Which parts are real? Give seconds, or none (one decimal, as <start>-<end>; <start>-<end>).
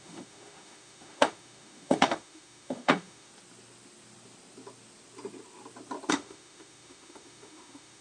3.3-6.1